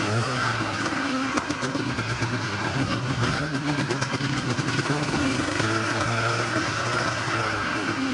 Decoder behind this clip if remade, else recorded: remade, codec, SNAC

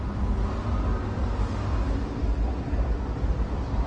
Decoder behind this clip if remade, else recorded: recorded